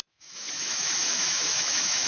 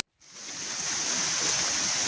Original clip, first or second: second